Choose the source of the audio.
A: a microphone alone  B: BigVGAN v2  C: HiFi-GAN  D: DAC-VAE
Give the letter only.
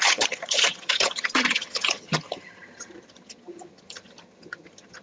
C